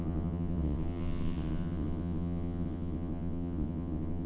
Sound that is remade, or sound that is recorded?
remade